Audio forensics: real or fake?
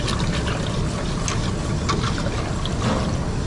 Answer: real